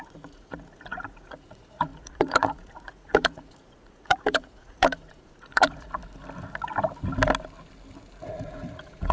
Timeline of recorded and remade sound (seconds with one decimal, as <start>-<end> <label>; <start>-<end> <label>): 0.0-6.0 remade; 6.0-8.3 recorded; 8.3-9.1 remade